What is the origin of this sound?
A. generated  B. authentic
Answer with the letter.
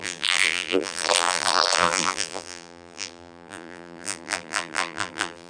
A